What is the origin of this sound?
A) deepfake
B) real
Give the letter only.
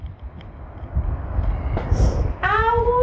B